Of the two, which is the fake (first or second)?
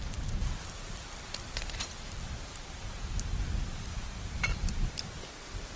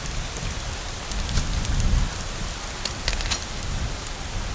first